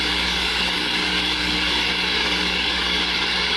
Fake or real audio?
fake